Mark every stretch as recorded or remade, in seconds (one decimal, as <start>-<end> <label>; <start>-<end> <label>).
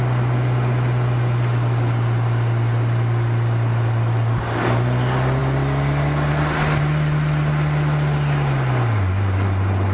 0.0-9.9 recorded